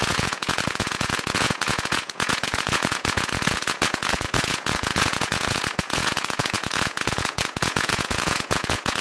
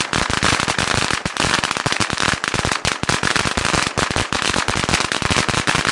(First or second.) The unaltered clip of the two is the second